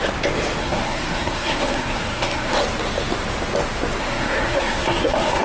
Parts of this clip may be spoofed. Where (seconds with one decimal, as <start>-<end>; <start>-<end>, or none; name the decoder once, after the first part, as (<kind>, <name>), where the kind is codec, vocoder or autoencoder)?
0.6-2.6 (codec, SNAC); 4.0-5.4